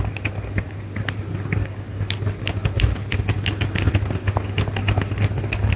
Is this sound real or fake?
real